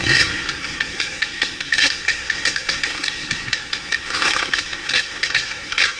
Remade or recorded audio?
remade